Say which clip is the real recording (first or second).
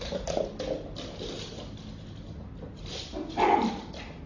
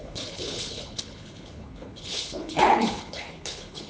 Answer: first